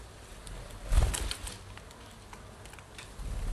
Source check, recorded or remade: recorded